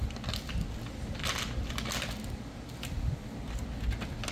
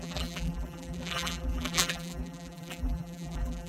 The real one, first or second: first